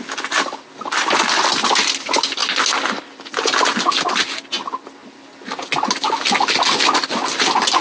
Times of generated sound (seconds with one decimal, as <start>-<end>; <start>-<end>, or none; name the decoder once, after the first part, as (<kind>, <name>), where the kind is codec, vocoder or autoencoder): none